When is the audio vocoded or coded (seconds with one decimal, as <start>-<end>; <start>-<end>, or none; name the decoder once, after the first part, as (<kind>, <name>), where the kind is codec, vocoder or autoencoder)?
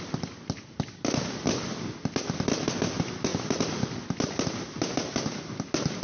none